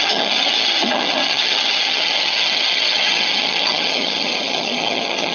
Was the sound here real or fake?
fake